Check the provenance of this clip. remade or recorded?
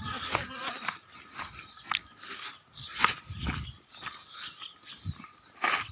recorded